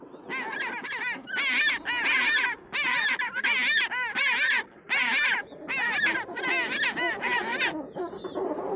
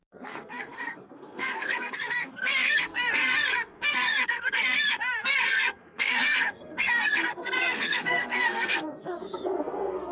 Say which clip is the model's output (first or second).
second